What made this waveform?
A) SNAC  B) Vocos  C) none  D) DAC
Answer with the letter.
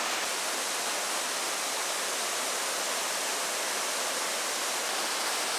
C